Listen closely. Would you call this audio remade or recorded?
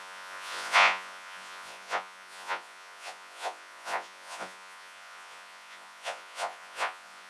remade